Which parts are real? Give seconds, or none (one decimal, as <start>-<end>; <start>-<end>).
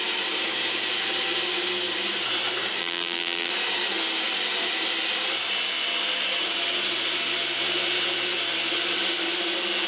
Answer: 0.0-2.8; 3.5-9.9